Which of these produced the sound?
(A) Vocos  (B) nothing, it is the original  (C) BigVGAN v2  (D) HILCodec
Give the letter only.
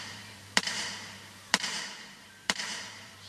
C